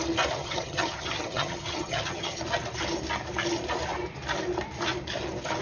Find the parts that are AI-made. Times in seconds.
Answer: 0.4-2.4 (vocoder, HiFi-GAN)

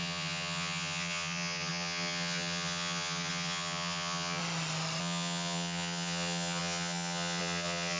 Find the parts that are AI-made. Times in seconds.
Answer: 0.0-4.4 (vocoder, HiFi-GAN); 5.0-8.0